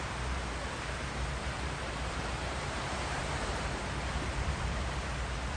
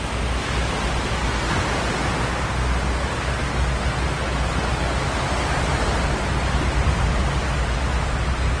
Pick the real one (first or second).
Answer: second